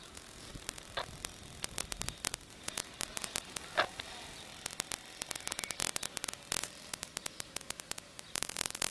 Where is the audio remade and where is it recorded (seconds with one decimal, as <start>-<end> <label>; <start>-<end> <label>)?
0.0-0.5 remade; 0.5-2.6 recorded; 2.6-4.5 remade; 4.5-6.6 recorded; 6.6-8.9 remade